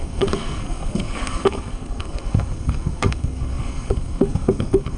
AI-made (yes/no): yes